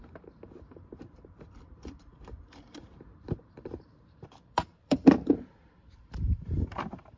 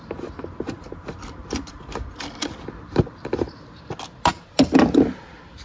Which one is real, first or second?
second